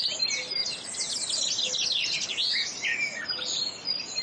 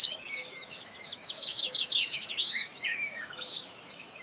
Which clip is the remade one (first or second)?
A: second